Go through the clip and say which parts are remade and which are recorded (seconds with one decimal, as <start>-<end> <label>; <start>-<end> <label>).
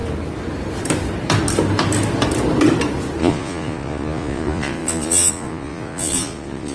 0.0-3.2 recorded; 3.2-6.7 remade